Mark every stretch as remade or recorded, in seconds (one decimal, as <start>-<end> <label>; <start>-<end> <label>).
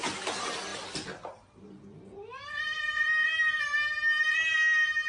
0.0-5.1 recorded